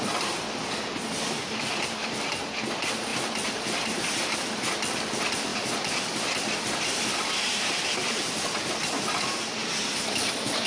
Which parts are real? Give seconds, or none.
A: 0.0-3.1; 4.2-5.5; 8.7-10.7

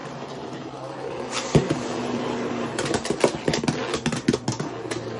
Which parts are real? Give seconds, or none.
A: 3.1-5.2

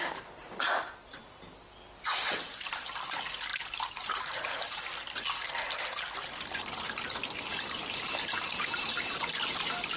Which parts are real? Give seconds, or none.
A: 0.0-5.0; 8.9-10.0

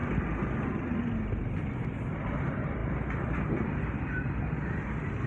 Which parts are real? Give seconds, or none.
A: 2.8-4.4